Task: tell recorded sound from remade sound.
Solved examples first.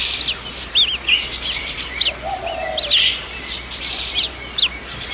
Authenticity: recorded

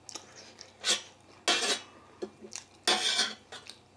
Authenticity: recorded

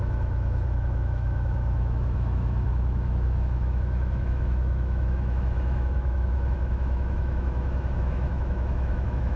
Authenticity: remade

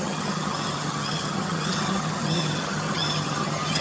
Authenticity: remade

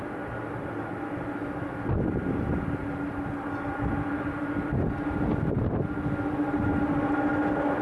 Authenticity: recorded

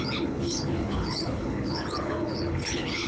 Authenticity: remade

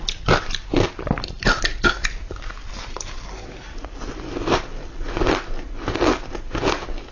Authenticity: recorded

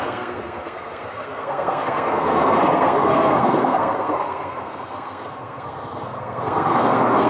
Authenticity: remade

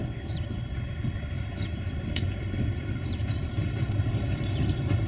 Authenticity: remade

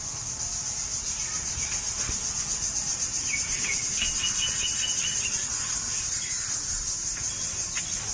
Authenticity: recorded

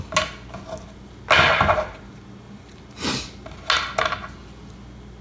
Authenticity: recorded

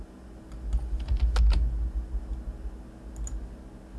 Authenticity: recorded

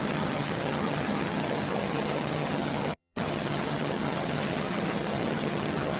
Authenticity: remade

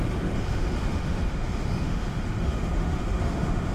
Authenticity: remade